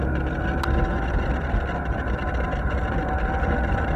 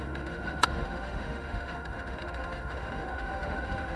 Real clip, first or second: first